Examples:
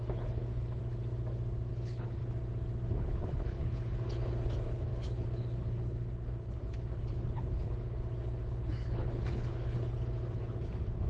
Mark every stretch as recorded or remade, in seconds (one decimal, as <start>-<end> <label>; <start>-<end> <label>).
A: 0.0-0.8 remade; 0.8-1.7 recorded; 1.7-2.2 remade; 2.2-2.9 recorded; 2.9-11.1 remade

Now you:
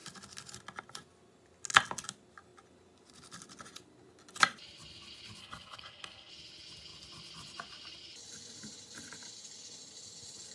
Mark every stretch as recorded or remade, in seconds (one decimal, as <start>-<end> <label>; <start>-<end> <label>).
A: 0.0-5.4 recorded; 5.4-6.3 remade; 6.3-10.5 recorded

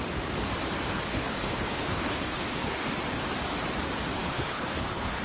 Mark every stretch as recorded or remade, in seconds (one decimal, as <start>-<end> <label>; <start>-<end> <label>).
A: 0.0-1.1 recorded; 1.1-2.9 remade; 2.9-4.2 recorded; 4.2-5.2 remade

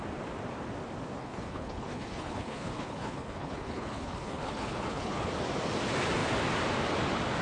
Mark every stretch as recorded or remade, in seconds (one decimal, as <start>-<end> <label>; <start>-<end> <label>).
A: 0.0-1.2 recorded; 1.2-5.3 remade; 5.3-7.4 recorded

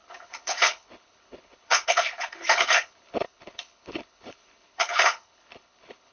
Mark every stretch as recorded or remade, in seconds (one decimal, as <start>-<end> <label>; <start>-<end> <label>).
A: 0.0-6.1 remade

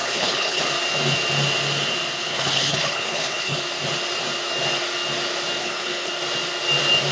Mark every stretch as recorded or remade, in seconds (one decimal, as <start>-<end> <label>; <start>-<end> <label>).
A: 0.0-0.6 remade; 0.6-2.2 recorded; 2.2-3.6 remade; 3.6-5.6 recorded; 5.6-6.1 remade; 6.1-7.1 recorded

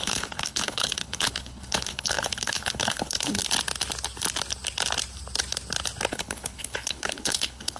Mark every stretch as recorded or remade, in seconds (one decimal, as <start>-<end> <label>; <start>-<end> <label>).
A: 0.0-3.4 remade; 3.4-6.1 recorded; 6.1-7.8 remade